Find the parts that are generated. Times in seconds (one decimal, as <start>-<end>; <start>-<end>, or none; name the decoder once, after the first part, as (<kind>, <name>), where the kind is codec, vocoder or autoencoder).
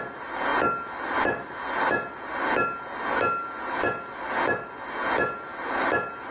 none